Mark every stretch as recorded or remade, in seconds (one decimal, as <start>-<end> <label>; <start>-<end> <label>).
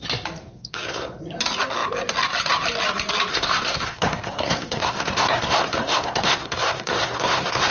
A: 0.0-0.4 recorded; 0.4-1.2 remade; 1.2-3.3 recorded; 3.3-7.7 remade